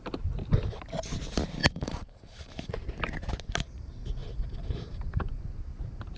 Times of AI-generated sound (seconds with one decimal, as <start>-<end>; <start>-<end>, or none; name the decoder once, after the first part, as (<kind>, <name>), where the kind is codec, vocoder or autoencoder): 1.6-2.7 (vocoder, BigVGAN v2); 4.2-5.4